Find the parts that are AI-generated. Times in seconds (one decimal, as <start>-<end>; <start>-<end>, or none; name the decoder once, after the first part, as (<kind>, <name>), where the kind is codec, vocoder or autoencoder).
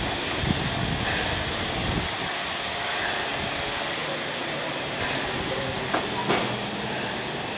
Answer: none